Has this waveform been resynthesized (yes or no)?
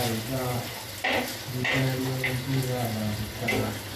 no